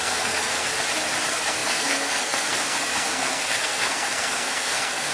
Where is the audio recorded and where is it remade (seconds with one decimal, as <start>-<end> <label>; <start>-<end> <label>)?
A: 0.0-0.7 remade; 0.7-1.2 recorded; 1.2-5.1 remade